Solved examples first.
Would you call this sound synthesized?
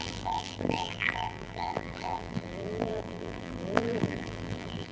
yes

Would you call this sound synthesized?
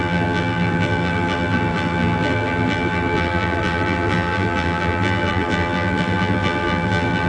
yes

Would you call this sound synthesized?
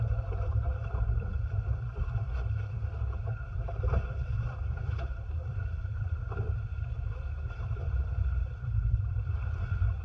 yes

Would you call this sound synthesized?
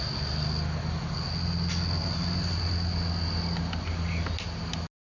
no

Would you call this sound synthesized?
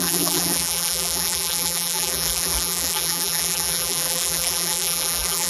yes